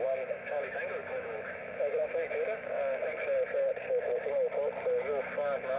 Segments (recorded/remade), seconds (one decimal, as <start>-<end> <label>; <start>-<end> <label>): 0.0-2.8 remade; 2.8-5.8 recorded